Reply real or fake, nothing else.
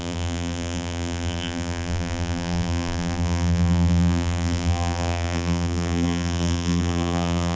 fake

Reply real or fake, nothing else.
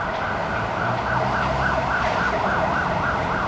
real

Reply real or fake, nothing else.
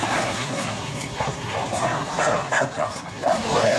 fake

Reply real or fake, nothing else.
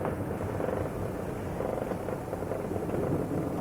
real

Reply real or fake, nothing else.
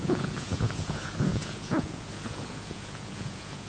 fake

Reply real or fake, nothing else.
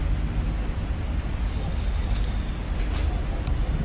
real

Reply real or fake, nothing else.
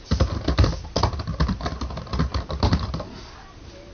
real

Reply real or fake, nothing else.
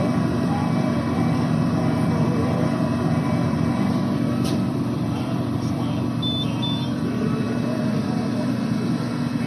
fake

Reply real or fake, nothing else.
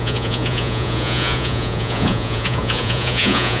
fake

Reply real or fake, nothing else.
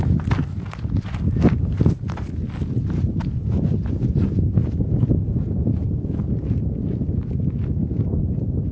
real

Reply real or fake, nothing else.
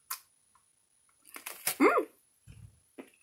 real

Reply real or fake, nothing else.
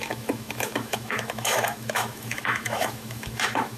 fake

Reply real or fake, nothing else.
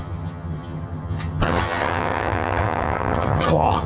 fake